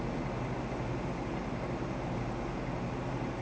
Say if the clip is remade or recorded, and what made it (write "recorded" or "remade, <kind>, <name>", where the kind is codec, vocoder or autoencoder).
recorded